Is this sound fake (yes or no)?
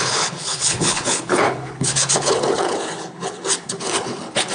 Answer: yes